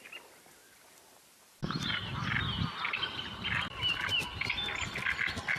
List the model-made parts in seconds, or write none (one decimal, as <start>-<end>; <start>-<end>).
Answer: none